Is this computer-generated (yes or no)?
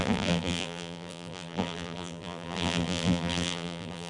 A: yes